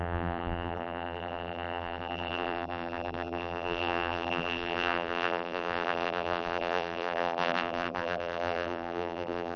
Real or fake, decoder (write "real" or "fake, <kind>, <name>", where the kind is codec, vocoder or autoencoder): fake, vocoder, BigVGAN v2